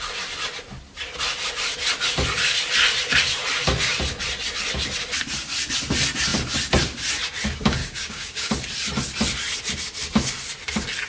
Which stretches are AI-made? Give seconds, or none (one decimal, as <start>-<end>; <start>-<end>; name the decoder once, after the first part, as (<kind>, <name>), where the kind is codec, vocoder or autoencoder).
7.8-8.5 (codec, DAC)